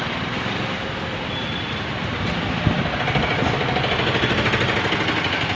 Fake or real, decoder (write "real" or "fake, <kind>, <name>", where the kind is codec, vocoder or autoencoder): real